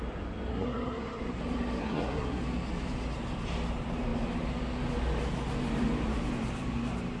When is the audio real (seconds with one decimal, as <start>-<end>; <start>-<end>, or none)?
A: 0.0-0.5; 1.4-1.8; 2.4-7.2